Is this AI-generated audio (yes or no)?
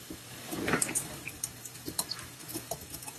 yes